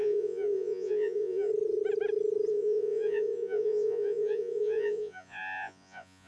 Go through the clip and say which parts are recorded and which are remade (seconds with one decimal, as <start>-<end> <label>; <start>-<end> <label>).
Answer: 0.0-1.5 remade; 1.5-2.5 recorded; 2.5-6.3 remade